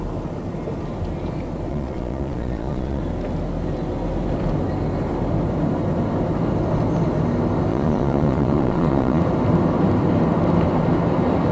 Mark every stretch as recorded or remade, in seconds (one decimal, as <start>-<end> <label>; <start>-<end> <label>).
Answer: 0.0-1.7 recorded; 1.7-3.0 remade; 3.0-7.7 recorded; 7.7-9.2 remade; 9.2-11.5 recorded